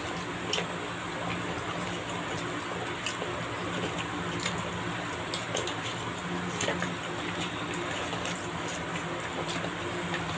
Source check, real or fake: real